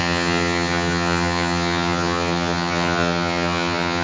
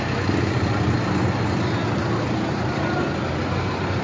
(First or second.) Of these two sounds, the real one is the second